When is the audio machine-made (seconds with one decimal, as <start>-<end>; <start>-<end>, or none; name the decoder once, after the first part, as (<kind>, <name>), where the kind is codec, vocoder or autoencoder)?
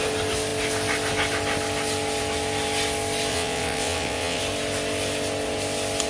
3.3-4.4 (vocoder, WaveNeXt)